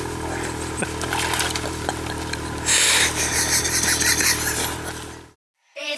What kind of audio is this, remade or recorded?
recorded